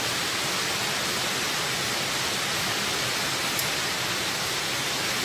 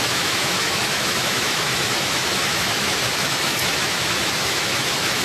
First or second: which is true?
first